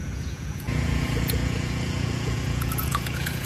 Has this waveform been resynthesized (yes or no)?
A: yes